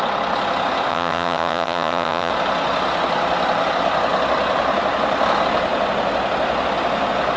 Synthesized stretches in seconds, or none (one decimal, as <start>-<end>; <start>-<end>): 0.9-2.3